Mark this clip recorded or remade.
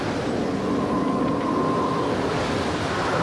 remade